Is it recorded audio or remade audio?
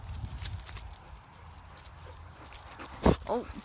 recorded